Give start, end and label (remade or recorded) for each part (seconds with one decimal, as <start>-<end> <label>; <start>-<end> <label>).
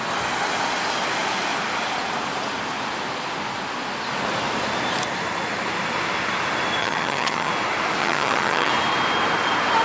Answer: 0.0-6.8 recorded; 6.8-7.5 remade; 7.5-8.0 recorded; 8.0-8.7 remade; 8.7-9.8 recorded